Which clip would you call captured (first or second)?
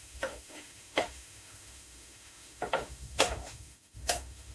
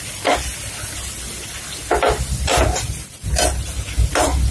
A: second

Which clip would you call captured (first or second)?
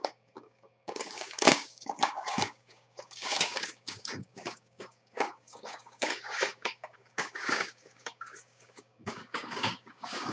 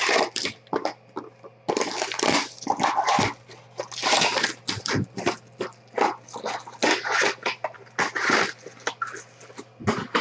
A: second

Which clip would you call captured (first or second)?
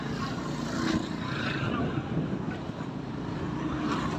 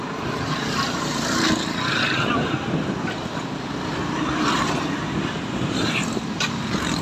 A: first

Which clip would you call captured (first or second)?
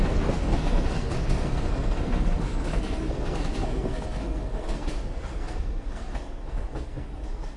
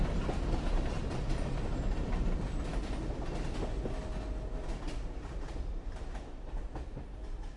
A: second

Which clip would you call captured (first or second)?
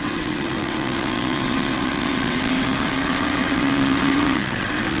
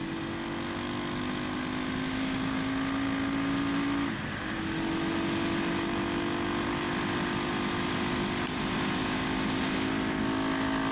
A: second